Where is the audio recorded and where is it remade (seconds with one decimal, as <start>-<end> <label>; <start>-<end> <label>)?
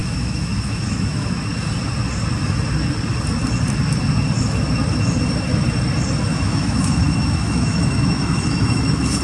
0.0-1.4 remade; 1.4-6.3 recorded; 6.3-9.2 remade